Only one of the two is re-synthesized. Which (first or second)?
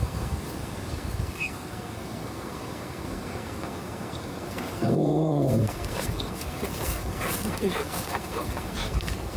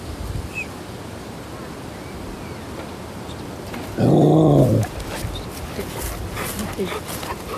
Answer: first